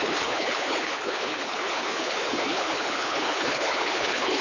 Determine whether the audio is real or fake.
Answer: fake